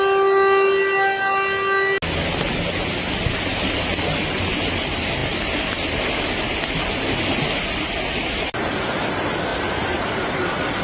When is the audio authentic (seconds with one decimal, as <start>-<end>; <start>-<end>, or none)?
0.0-9.5; 10.3-10.8